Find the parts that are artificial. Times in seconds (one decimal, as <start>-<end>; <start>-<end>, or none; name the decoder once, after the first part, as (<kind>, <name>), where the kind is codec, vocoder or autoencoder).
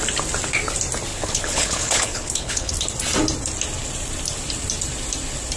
1.1-2.7 (codec, HILCodec)